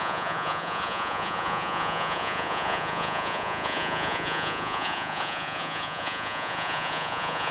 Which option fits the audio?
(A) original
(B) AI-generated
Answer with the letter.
B